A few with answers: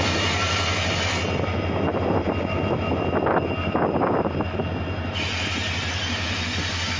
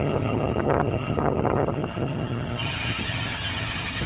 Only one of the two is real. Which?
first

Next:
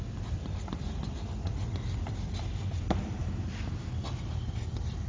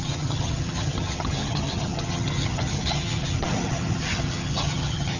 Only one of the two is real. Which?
first